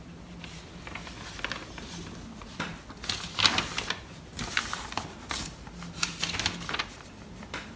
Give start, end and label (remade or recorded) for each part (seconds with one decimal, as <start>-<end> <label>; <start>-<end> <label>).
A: 0.0-7.8 recorded